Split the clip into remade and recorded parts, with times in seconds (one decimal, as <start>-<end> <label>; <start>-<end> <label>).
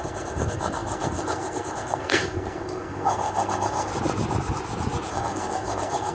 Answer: 0.0-3.9 remade; 3.9-5.1 recorded; 5.1-6.1 remade